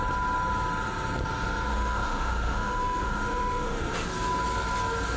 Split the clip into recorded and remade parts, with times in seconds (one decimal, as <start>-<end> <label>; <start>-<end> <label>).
0.0-1.7 recorded; 1.7-3.9 remade; 3.9-5.2 recorded